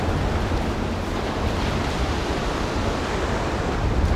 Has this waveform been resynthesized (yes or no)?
no